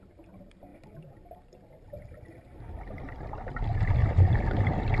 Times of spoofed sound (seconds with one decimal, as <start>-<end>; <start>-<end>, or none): 4.0-5.0